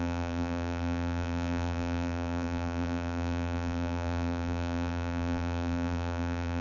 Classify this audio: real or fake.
fake